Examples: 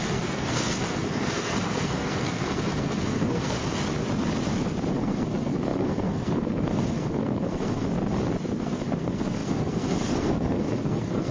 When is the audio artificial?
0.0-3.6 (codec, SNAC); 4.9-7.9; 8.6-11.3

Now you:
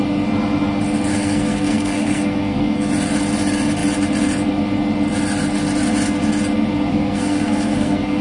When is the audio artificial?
1.1-2.9 (codec, SNAC); 6.9-8.2

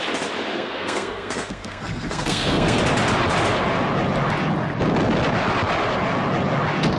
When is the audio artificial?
0.5-2.8 (codec, SNAC)